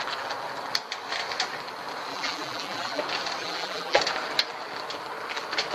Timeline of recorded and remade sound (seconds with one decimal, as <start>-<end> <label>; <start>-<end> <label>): 0.0-2.1 recorded; 2.1-3.0 remade; 3.0-3.4 recorded; 3.4-4.0 remade; 4.0-5.7 recorded